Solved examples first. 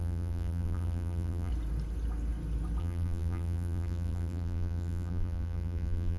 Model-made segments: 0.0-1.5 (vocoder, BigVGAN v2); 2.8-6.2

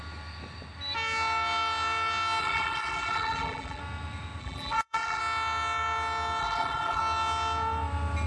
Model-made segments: 2.4-3.8 (vocoder, BigVGAN v2); 4.4-5.2; 6.4-7.0

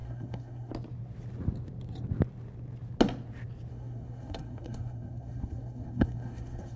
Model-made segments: 0.0-0.7 (codec, SNAC); 3.7-6.8

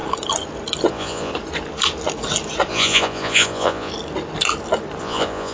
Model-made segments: 0.9-1.3 (vocoder, Vocos); 2.7-3.9; 5.0-5.5

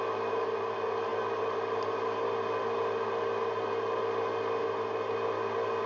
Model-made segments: none

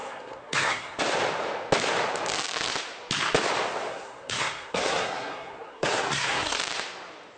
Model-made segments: 0.0-1.0 (codec, SNAC); 3.9-6.6

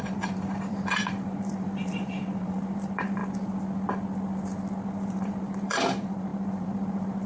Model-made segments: 0.0-3.2 (vocoder, BigVGAN v2); 4.9-7.3